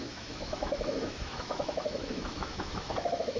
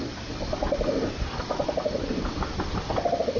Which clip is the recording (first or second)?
second